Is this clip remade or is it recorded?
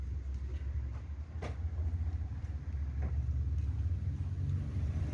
recorded